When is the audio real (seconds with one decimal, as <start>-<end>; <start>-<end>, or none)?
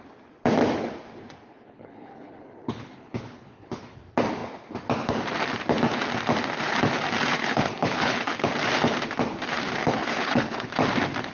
0.0-1.5; 4.0-7.4; 8.5-9.8; 10.7-11.3